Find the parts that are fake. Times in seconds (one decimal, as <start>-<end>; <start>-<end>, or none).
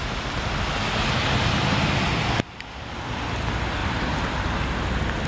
3.8-4.4